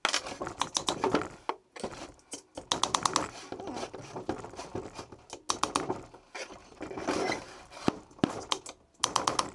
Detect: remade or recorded recorded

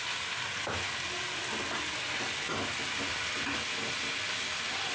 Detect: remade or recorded recorded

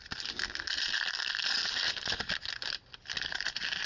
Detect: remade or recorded recorded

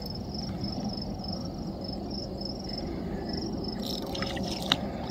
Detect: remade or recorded recorded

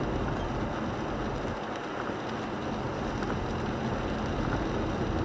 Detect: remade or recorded recorded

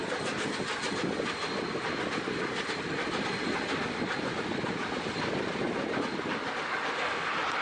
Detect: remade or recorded recorded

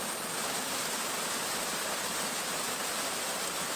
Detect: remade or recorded recorded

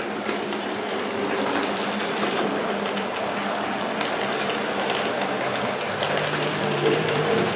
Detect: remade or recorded recorded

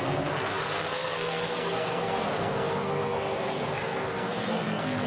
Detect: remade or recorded remade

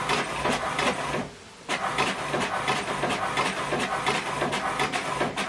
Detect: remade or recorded recorded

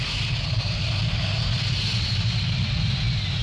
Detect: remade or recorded recorded